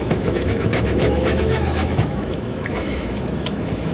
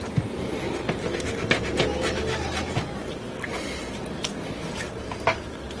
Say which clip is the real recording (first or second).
second